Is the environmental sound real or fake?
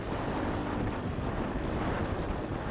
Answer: real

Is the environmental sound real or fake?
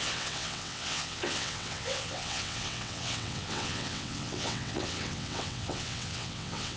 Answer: fake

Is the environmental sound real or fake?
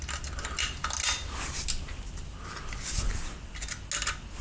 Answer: real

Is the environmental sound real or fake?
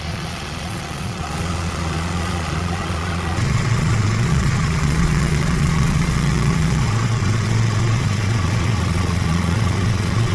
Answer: fake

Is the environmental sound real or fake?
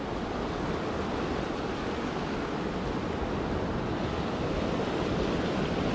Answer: real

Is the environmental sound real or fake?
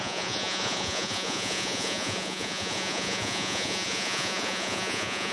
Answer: fake